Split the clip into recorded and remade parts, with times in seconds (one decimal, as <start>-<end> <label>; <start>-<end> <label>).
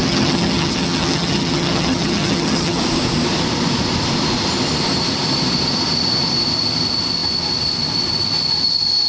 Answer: 0.0-2.8 remade; 2.8-9.1 recorded